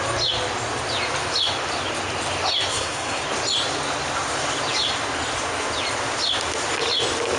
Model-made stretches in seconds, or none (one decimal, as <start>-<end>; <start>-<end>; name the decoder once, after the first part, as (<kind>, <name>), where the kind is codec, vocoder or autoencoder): 2.7-3.2 (codec, SNAC)